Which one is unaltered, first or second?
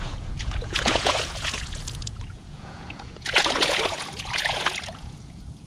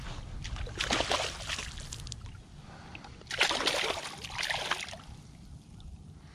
second